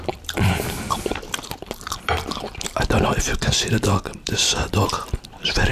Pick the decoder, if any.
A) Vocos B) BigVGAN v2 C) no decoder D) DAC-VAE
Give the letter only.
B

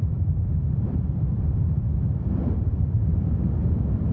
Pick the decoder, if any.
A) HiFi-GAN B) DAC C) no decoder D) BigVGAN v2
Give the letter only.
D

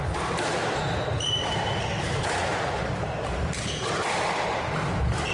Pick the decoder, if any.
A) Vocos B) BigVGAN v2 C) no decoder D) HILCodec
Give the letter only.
B